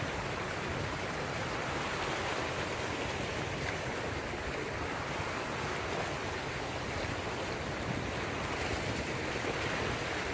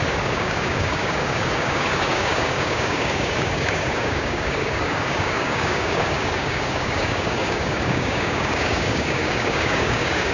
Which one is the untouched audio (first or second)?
first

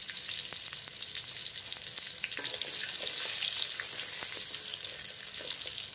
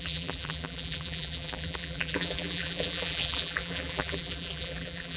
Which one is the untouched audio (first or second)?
first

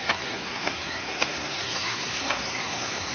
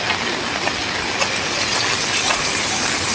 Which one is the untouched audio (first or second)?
second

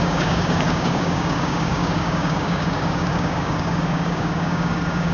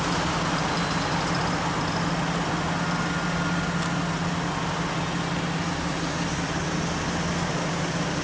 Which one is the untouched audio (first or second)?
second